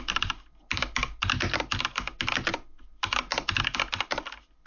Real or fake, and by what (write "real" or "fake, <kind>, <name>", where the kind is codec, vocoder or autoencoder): real